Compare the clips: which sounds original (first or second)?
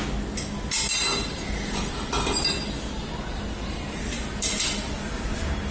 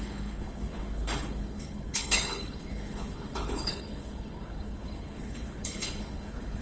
first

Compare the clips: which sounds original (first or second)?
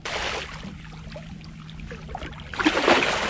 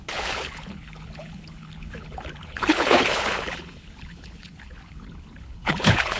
first